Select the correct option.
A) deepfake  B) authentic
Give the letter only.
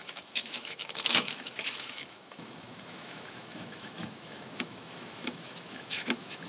A